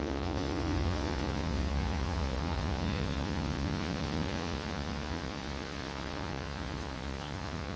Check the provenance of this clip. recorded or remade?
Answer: remade